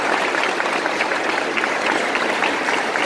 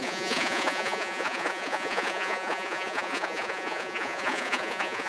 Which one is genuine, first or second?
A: first